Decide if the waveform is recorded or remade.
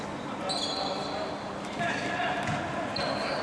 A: recorded